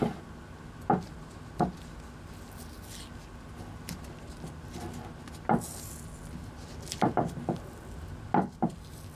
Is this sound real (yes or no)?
yes